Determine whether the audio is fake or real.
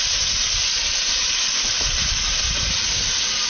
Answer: fake